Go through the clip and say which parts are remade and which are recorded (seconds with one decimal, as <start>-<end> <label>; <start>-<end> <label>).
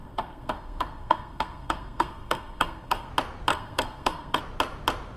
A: 0.0-3.1 remade; 3.1-3.5 recorded; 3.5-4.4 remade; 4.4-5.2 recorded